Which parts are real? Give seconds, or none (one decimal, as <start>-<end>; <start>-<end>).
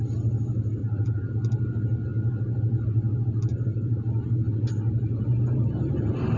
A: 0.0-0.8; 1.3-6.4